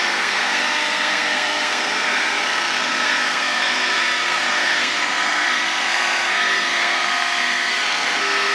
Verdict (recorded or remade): remade